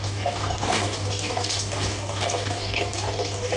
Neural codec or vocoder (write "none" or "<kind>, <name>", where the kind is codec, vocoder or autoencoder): codec, DAC